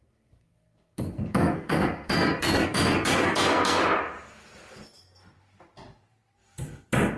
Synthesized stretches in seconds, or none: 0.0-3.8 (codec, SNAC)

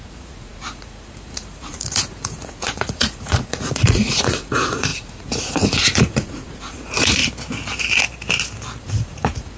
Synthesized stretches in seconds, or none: 0.0-7.2 (vocoder, Vocos); 8.8-9.6

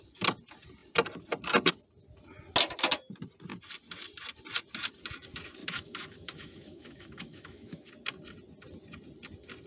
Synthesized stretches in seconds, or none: 5.6-7.9 (autoencoder, DAC-VAE)

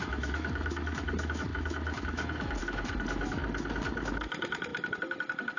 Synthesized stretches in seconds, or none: 0.0-3.4 (autoencoder, DAC-VAE); 4.1-5.6